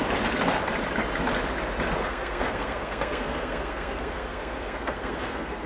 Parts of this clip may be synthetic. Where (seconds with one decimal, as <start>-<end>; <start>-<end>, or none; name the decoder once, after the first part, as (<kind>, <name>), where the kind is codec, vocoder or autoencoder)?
2.0-5.7 (codec, SNAC)